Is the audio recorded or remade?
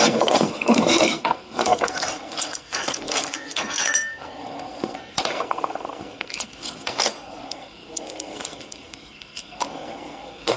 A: remade